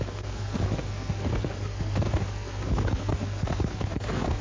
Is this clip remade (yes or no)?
yes